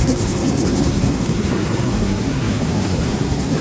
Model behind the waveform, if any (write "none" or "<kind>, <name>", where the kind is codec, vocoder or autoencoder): codec, SNAC